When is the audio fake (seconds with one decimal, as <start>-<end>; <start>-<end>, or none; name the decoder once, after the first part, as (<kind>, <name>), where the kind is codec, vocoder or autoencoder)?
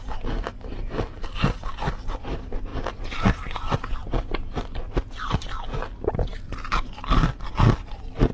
none